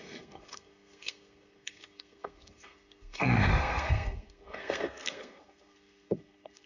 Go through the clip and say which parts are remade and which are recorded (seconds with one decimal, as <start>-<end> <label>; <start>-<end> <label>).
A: 0.0-6.7 remade